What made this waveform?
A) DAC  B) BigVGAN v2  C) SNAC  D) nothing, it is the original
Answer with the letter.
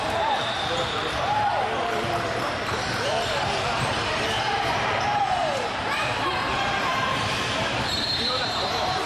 B